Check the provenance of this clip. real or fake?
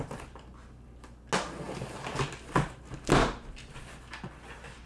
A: real